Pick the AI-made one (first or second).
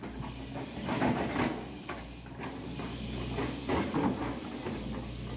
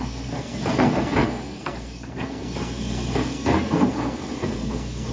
second